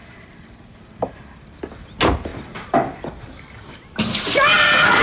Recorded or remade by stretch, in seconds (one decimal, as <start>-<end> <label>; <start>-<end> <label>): 0.0-5.0 recorded